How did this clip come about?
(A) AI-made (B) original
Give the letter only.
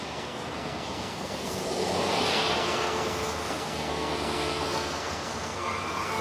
A